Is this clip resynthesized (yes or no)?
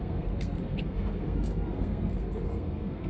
yes